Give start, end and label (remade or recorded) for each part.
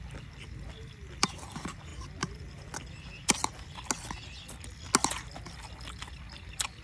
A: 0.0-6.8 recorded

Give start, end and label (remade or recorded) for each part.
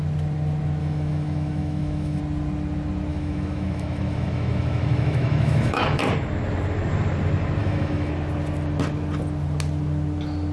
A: 0.0-0.8 recorded; 0.8-2.2 remade; 2.2-3.1 recorded; 3.1-6.0 remade; 6.0-7.6 recorded; 7.6-8.1 remade; 8.1-10.5 recorded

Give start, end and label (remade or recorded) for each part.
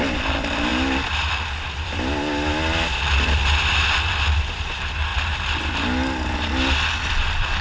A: 0.0-7.6 recorded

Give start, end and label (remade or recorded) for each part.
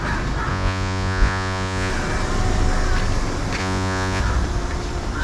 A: 0.0-0.5 recorded; 0.5-1.9 remade; 1.9-3.6 recorded; 3.6-4.2 remade; 4.2-5.2 recorded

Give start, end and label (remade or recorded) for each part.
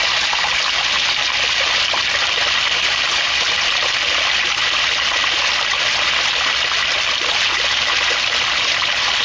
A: 0.0-9.2 recorded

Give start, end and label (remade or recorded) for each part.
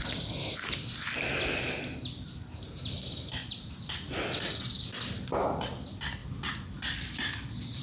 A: 0.0-3.4 recorded; 3.4-4.1 remade; 4.1-6.2 recorded; 6.2-6.7 remade; 6.7-7.8 recorded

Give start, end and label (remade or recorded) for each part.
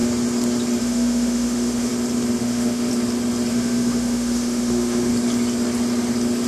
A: 0.0-0.8 recorded; 0.8-1.9 remade; 1.9-2.4 recorded; 2.4-2.9 remade; 2.9-3.5 recorded; 3.5-5.1 remade; 5.1-6.5 recorded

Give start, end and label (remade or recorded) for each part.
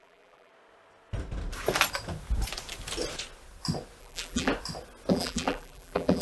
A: 0.0-0.5 remade; 0.5-4.0 recorded; 4.0-4.5 remade; 4.5-5.1 recorded; 5.1-6.2 remade